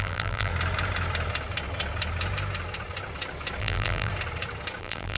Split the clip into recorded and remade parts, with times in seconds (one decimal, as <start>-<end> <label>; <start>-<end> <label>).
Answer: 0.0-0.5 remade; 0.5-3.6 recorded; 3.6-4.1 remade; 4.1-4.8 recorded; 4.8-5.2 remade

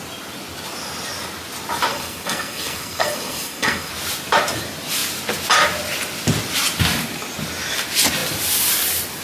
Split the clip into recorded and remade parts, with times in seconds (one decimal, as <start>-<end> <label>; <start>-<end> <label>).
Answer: 0.0-1.9 recorded; 1.9-3.9 remade; 3.9-9.2 recorded

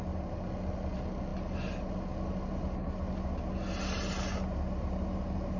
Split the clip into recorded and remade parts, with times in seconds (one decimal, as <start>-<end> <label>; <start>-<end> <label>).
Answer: 0.0-5.6 recorded

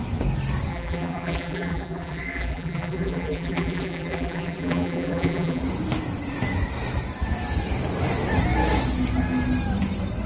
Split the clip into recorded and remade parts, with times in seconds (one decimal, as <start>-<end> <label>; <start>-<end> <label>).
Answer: 0.0-0.7 recorded; 0.7-5.6 remade; 5.6-10.3 recorded